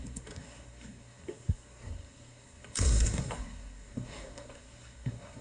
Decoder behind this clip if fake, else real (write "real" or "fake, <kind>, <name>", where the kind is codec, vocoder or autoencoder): fake, codec, SNAC